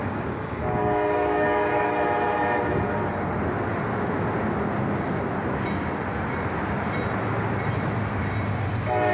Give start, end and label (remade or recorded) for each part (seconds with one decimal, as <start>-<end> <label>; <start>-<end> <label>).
0.0-1.9 remade; 1.9-9.1 recorded